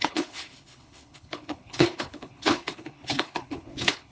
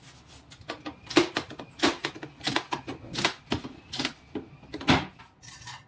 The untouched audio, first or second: second